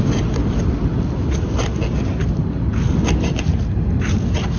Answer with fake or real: real